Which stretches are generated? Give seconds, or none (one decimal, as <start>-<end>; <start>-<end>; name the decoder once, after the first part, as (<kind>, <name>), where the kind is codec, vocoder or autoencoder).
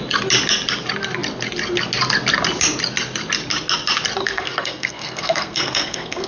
4.2-6.3 (codec, SNAC)